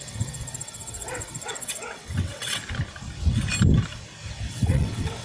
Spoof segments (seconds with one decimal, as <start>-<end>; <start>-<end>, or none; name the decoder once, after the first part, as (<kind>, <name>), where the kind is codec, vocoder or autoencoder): 0.0-2.6 (vocoder, WaveNeXt); 4.5-5.2

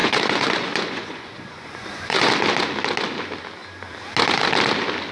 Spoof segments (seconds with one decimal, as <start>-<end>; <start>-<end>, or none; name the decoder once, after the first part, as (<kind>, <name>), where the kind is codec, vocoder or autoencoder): 0.0-2.3 (vocoder, Vocos)